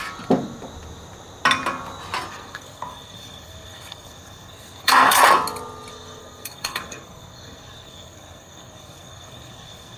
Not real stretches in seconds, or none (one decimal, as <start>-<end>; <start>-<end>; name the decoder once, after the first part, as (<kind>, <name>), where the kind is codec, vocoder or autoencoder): 2.3-5.2 (codec, SNAC); 5.9-10.0